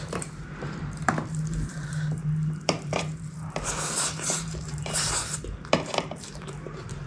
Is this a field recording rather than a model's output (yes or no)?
no